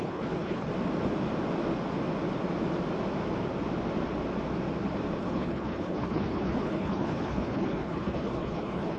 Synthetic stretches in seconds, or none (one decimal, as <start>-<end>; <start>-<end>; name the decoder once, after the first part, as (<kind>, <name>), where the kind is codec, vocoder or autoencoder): 0.0-0.7 (codec, HILCodec); 5.2-9.0